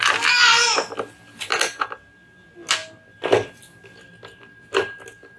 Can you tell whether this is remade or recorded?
recorded